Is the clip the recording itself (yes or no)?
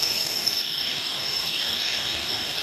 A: no